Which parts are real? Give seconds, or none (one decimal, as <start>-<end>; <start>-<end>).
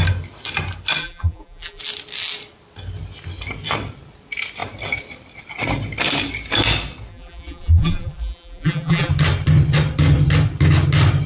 0.0-1.0; 1.8-7.1; 9.1-11.3